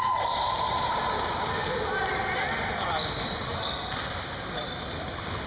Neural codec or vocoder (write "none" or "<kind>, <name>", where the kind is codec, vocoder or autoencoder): vocoder, BigVGAN v2